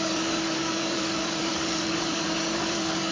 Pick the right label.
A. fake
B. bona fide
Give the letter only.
A